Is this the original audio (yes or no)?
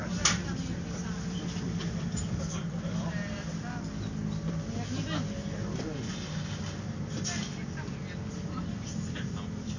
yes